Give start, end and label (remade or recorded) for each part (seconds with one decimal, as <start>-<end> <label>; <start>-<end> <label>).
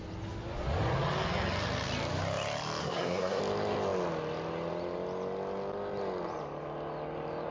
0.0-2.8 recorded; 2.8-3.4 remade; 3.4-7.5 recorded